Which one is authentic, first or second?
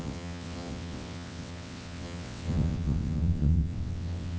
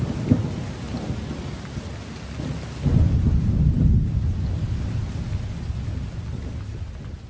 second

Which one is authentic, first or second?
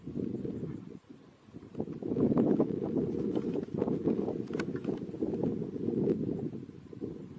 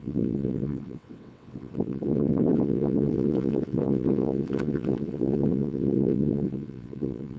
first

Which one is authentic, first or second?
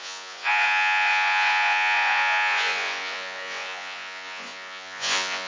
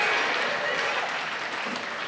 second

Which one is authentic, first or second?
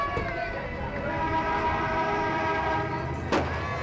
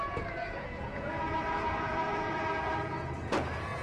first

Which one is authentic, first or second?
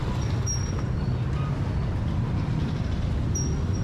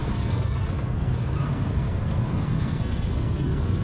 first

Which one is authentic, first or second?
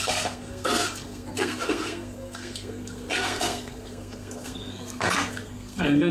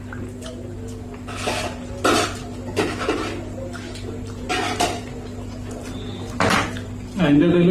second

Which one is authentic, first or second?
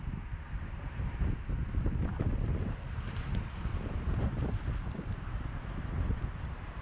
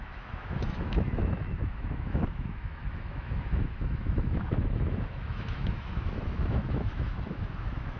first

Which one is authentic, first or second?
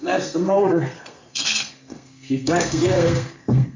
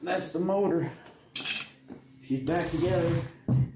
second